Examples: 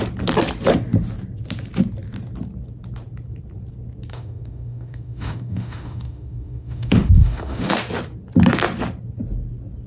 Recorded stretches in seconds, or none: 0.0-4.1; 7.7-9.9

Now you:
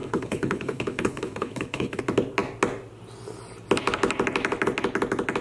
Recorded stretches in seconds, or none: 2.0-5.4

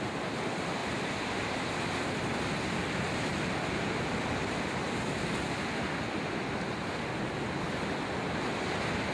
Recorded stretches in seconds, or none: 0.0-0.8; 1.7-9.1

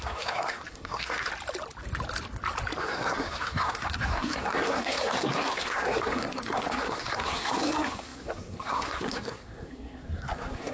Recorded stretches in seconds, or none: 1.3-2.8